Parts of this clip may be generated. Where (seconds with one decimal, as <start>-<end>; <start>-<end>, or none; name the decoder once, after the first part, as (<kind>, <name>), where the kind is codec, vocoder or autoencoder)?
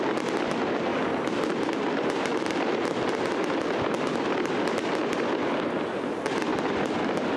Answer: none